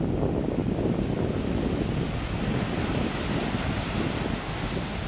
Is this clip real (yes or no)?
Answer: yes